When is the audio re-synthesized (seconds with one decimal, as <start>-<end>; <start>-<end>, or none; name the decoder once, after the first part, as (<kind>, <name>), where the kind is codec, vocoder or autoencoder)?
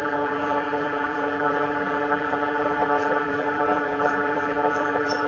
0.0-5.3 (vocoder, BigVGAN v2)